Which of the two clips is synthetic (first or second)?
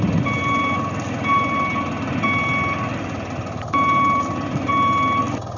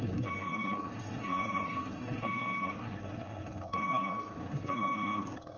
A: second